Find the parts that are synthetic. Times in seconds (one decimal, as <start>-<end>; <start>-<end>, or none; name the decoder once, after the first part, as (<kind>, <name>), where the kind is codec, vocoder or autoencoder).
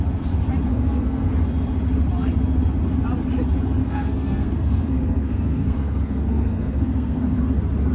0.7-1.3 (codec, SNAC); 3.8-7.4